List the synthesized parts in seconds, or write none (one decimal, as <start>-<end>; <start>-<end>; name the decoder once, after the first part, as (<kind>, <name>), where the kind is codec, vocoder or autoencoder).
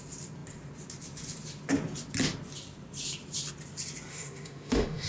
4.1-5.1 (autoencoder, DAC-VAE)